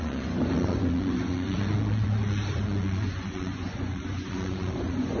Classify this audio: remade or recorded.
remade